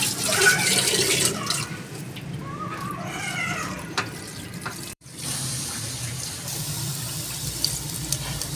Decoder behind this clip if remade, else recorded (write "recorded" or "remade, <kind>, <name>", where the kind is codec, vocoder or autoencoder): remade, vocoder, BigVGAN v2